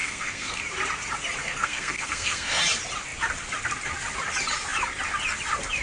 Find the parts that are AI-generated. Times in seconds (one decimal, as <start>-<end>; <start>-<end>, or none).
0.0-0.6; 1.4-2.6